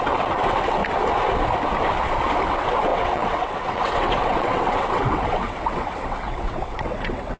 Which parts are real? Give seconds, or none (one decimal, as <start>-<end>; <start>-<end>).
0.8-2.5